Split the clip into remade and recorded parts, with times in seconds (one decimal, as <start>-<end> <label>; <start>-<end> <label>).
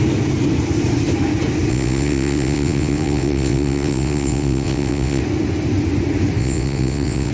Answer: 0.0-1.7 recorded; 1.7-5.2 remade; 5.2-6.4 recorded; 6.4-7.3 remade